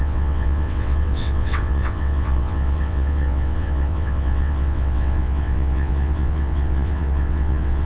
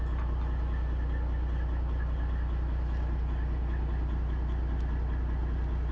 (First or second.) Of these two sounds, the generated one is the first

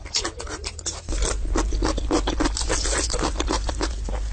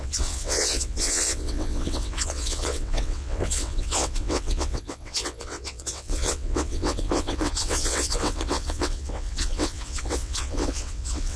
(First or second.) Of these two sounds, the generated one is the second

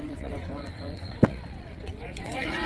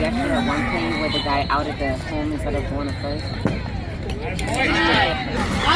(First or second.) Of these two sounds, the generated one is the first